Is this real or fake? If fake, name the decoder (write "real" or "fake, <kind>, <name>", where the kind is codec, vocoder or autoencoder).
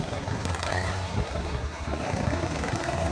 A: fake, codec, SNAC